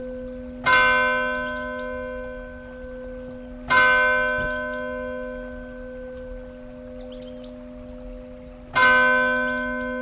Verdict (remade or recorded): recorded